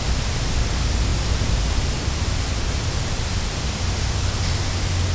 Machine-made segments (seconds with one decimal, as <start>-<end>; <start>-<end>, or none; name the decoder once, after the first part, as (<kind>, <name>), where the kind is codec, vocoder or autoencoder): none

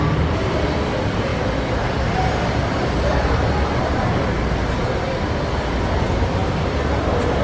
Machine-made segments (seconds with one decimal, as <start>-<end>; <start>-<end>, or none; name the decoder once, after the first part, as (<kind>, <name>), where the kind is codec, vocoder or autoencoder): none

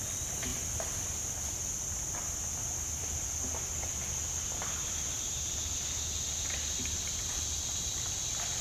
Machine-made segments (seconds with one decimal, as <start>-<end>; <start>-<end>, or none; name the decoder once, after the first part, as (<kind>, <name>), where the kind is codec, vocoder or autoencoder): none